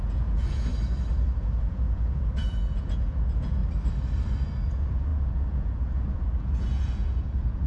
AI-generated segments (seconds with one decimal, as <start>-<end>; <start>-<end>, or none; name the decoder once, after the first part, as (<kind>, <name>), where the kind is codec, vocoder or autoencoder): 0.0-0.7 (vocoder, Vocos); 1.4-3.6; 4.6-7.7